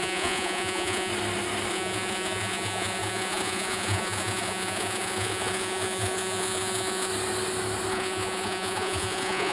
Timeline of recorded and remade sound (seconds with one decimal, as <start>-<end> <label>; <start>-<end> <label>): 0.0-1.1 remade; 1.1-1.7 recorded; 1.7-7.1 remade; 7.1-7.9 recorded; 7.9-9.5 remade